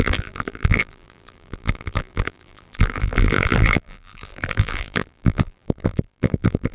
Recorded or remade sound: remade